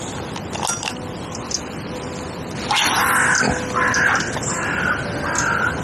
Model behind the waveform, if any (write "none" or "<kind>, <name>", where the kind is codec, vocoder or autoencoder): none